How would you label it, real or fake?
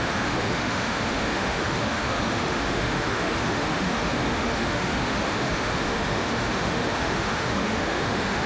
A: fake